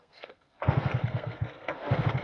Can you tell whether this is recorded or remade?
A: remade